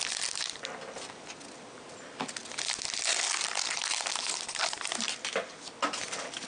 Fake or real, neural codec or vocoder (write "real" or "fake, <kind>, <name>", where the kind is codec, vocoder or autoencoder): real